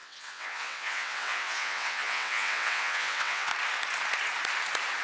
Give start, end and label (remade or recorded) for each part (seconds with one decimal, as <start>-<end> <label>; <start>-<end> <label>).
0.0-3.5 remade; 3.5-5.0 recorded